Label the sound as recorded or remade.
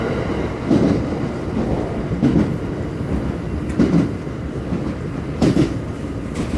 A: recorded